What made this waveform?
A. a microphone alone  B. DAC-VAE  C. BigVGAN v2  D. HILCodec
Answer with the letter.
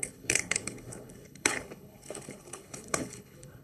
D